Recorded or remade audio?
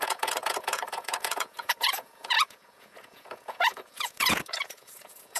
remade